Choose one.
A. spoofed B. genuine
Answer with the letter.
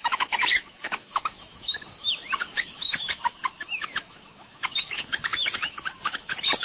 A